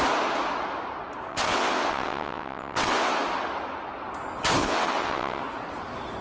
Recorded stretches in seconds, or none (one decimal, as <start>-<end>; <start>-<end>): 0.0-1.3; 3.1-4.6; 5.4-6.2